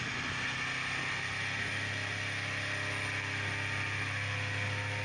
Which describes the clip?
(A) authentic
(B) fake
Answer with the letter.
A